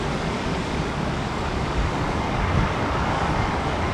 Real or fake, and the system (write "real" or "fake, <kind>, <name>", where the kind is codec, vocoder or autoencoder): fake, codec, DAC